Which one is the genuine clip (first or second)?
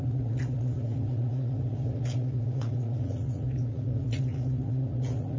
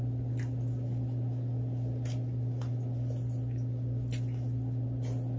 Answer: second